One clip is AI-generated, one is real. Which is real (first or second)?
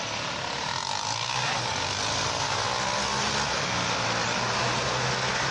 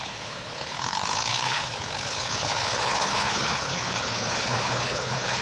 first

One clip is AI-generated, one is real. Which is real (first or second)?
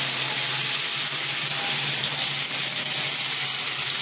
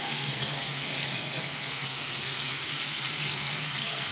first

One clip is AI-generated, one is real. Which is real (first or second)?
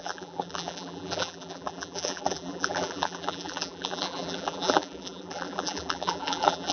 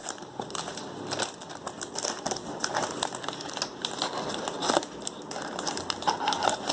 second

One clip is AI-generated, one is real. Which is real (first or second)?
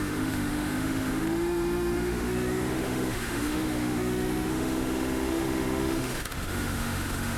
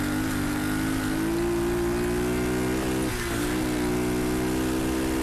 second